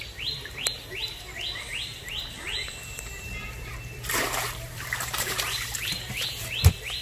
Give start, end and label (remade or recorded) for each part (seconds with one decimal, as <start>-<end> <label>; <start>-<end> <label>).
0.0-1.9 recorded; 1.9-6.1 remade; 6.1-7.0 recorded